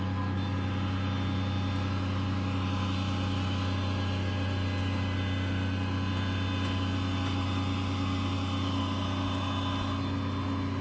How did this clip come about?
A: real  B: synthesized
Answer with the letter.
A